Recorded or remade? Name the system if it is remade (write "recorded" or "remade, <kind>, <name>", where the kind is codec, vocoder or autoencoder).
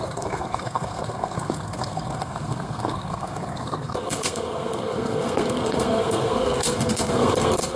remade, codec, SNAC